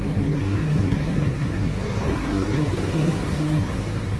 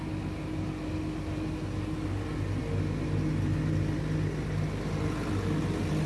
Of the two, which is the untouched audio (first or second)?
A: second